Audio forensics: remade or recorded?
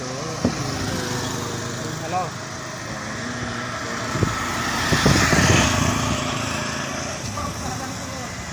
recorded